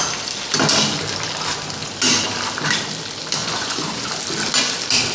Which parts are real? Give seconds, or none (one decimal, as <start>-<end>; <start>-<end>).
0.0-3.4; 4.1-5.1

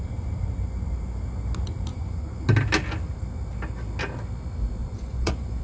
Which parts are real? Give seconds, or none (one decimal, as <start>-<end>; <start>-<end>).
0.0-1.9; 2.4-4.8